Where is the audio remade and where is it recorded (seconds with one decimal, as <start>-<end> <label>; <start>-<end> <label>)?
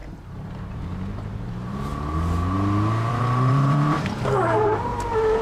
0.0-1.9 remade; 1.9-3.1 recorded; 3.1-4.9 remade; 4.9-5.4 recorded